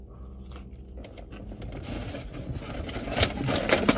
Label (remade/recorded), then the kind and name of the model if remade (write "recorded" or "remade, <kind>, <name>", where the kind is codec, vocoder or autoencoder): recorded